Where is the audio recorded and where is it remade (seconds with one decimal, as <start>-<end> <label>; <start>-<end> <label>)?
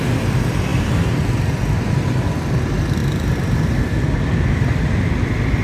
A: 0.0-5.6 recorded